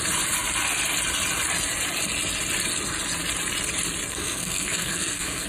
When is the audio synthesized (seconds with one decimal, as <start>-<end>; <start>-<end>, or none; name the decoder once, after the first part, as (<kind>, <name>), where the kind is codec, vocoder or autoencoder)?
4.1-5.5 (codec, SNAC)